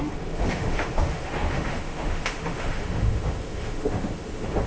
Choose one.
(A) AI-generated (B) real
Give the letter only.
A